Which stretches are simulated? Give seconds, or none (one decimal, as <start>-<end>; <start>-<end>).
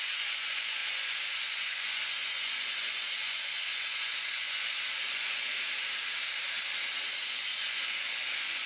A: 0.0-5.5; 7.2-8.7